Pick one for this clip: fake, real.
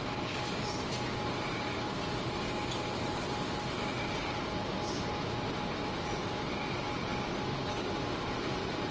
real